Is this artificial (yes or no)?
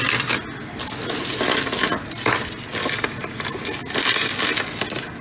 no